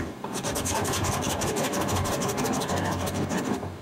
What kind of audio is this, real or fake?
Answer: fake